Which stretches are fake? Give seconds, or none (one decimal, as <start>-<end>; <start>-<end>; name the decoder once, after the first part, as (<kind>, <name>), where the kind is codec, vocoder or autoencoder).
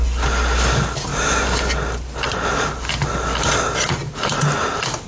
none